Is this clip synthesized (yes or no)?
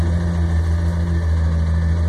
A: no